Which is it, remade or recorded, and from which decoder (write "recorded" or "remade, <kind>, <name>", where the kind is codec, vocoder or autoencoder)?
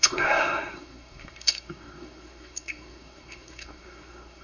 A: remade, codec, SNAC